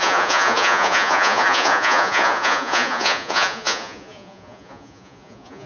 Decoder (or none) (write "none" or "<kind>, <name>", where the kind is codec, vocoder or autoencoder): vocoder, Vocos